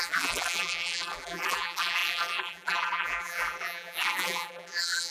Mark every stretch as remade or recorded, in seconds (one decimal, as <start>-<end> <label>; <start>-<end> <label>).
0.0-5.1 remade